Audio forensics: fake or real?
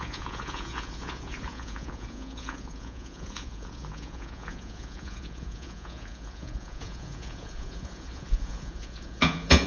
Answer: fake